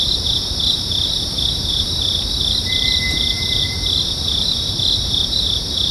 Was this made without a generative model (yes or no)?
no